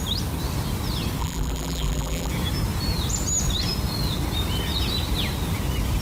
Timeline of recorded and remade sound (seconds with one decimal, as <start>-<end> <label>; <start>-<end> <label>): 0.0-1.2 recorded; 1.2-2.3 remade; 2.3-6.0 recorded